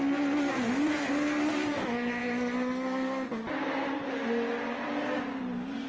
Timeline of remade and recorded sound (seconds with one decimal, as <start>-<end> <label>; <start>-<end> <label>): 0.0-5.9 recorded